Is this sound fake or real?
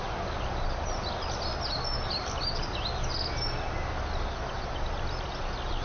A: real